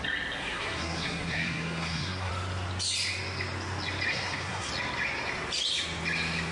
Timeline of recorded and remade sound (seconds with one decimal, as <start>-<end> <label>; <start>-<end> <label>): 0.0-0.4 recorded; 0.4-2.3 remade; 2.3-4.1 recorded; 4.1-4.7 remade; 4.7-6.5 recorded